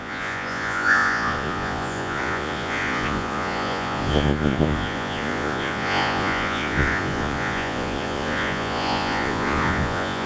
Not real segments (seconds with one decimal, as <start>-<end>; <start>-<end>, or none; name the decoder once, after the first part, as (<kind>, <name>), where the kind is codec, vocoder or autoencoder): 0.0-10.3 (vocoder, Vocos)